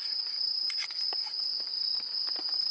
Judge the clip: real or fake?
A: real